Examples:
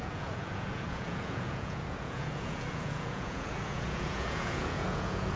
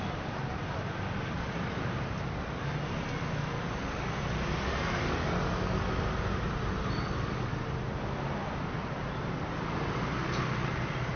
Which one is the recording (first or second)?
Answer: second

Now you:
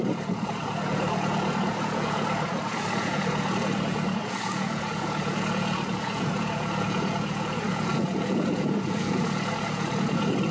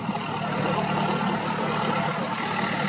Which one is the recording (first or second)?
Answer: second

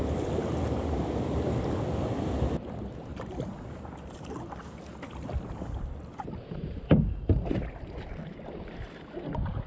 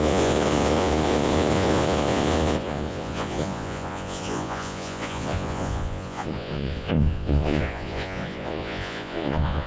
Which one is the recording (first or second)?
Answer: first